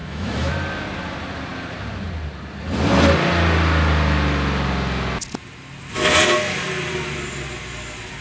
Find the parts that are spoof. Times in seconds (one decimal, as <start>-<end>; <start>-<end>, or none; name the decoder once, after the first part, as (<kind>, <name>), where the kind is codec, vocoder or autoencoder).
0.0-0.5 (autoencoder, DAC-VAE)